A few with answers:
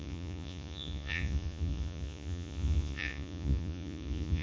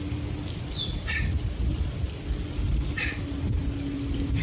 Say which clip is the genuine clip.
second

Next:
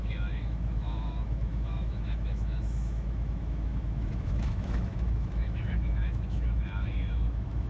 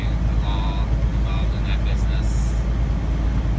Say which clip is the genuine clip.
second